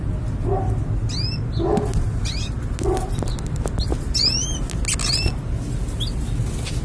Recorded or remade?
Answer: recorded